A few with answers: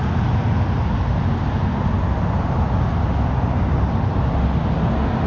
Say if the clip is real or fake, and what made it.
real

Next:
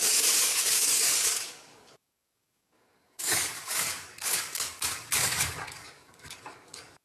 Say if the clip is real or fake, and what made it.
fake, codec, DAC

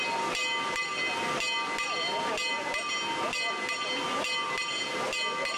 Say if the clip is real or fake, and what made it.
real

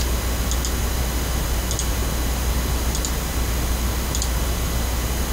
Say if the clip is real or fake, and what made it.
real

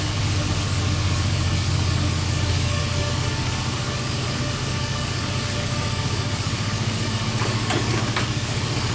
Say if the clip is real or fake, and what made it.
fake, codec, DAC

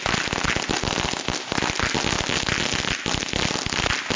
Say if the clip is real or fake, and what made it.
real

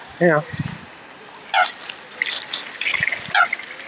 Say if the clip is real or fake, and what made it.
real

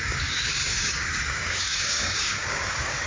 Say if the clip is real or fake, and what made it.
fake, codec, DAC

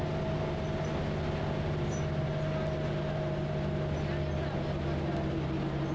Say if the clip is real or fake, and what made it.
real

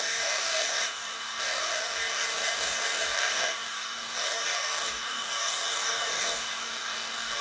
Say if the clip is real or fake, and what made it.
fake, codec, DAC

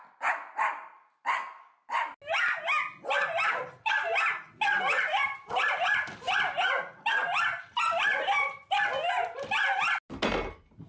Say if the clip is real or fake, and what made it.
real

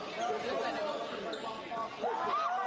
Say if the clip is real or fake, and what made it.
real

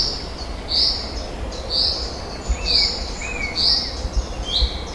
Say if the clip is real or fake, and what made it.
real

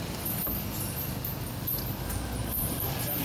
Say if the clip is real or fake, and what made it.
real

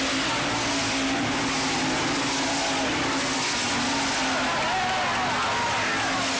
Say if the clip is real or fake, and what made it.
real